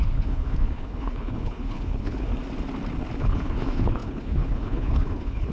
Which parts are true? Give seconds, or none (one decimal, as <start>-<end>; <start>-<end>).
2.3-3.2